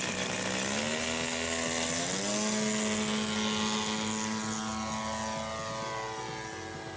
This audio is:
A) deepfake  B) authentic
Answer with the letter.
B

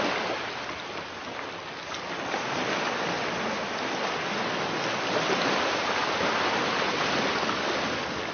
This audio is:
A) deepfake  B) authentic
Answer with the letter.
B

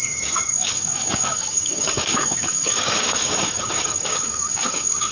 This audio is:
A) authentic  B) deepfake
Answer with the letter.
B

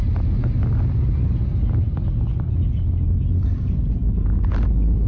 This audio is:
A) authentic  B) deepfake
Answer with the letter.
A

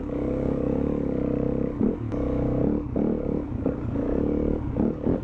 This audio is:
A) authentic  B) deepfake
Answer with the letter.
B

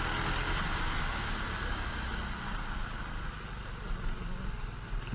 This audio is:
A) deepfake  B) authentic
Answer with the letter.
B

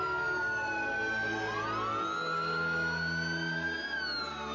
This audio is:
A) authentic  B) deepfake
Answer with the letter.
A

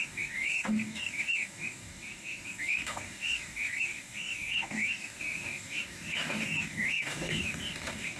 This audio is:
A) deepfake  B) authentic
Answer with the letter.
A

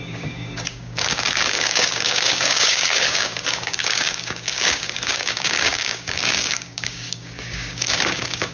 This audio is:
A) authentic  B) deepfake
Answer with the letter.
B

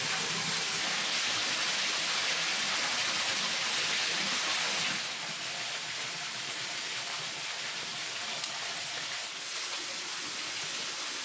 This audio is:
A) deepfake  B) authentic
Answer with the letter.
B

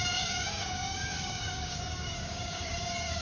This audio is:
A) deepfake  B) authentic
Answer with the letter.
A